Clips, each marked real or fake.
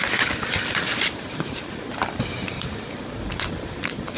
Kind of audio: fake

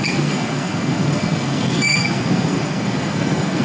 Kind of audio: fake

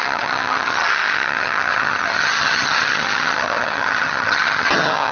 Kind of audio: fake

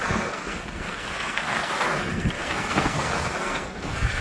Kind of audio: fake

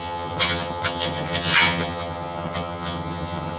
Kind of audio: fake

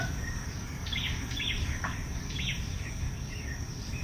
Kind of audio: fake